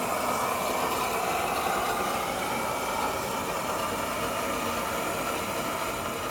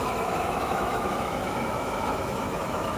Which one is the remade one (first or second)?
second